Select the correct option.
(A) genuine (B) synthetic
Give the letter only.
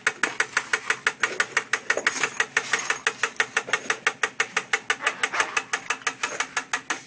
A